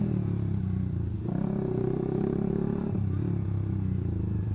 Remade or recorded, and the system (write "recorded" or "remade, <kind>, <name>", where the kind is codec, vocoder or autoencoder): remade, vocoder, BigVGAN v2